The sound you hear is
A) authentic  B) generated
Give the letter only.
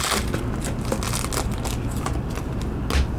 A